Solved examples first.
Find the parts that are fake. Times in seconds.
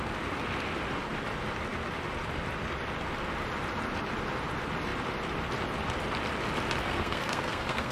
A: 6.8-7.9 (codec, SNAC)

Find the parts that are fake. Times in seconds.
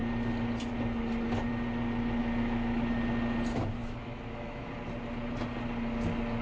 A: 2.2-2.8 (autoencoder, DAC-VAE); 3.8-4.7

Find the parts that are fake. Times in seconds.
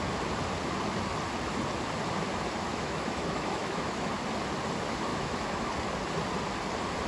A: 2.7-4.1 (autoencoder, DAC-VAE); 5.1-5.7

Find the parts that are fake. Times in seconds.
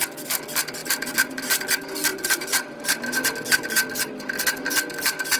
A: 0.8-1.6 (vocoder, BigVGAN v2); 2.1-2.8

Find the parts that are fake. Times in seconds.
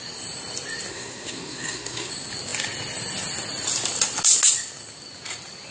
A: 0.9-2.1 (codec, SNAC)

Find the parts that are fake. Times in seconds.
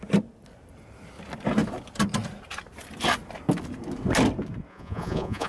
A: 4.7-5.5 (vocoder, Vocos)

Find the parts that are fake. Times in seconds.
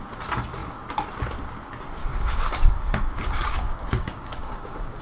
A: 2.0-5.0 (codec, DAC)